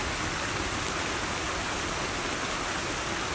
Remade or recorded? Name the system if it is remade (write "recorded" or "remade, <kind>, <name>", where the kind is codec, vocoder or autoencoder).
recorded